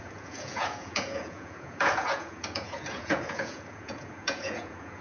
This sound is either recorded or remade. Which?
remade